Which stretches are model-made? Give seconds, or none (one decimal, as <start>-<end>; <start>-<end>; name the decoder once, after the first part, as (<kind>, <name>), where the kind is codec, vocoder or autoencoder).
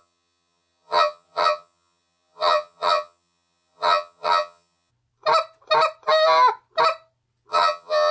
0.0-4.9 (vocoder, HiFi-GAN); 7.5-8.1